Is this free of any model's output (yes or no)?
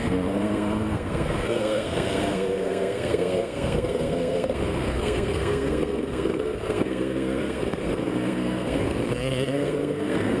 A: no